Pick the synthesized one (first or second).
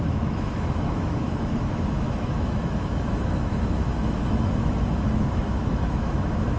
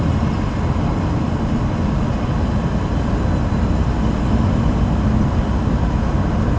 first